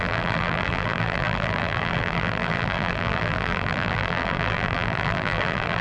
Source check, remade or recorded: remade